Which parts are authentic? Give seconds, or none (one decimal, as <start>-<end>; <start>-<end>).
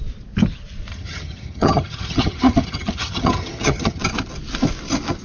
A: 0.0-0.9; 4.0-5.2